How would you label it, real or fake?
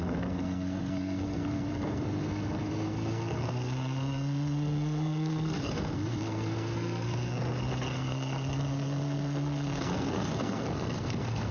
fake